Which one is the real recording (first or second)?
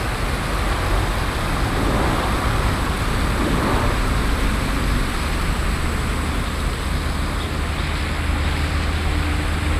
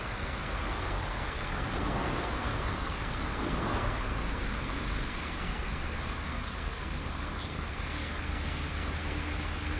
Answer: first